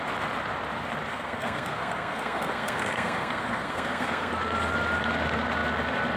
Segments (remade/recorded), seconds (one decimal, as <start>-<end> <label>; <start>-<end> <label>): 0.0-1.1 recorded; 1.1-4.3 remade; 4.3-6.2 recorded